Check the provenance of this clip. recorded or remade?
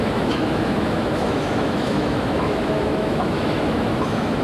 remade